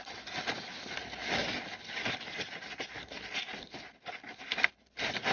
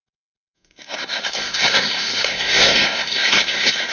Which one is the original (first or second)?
first